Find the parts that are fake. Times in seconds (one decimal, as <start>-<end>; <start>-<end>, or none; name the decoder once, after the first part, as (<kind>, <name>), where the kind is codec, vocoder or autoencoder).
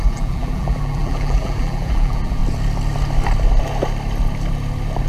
0.0-2.4 (vocoder, BigVGAN v2)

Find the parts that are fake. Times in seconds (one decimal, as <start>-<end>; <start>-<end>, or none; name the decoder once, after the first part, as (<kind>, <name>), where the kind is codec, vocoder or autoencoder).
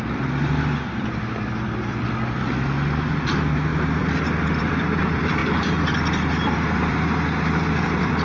0.0-8.2 (vocoder, BigVGAN v2)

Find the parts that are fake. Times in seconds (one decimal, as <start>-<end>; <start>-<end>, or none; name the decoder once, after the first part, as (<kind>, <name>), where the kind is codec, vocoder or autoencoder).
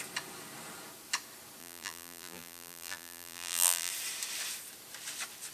1.6-3.9 (vocoder, BigVGAN v2)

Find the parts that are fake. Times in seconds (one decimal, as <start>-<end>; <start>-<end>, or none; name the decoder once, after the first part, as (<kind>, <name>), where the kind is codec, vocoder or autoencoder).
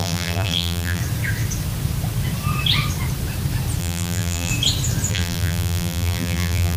0.0-1.0 (vocoder, BigVGAN v2); 3.8-4.5; 5.1-6.8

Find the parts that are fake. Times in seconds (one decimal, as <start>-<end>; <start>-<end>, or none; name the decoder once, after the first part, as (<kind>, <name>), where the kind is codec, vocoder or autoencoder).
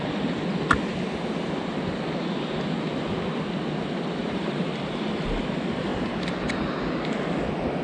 4.2-4.8 (vocoder, BigVGAN v2)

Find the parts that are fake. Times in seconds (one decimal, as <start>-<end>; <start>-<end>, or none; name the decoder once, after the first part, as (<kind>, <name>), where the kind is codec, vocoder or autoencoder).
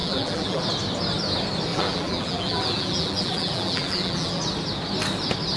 0.0-0.6 (vocoder, BigVGAN v2); 1.7-4.4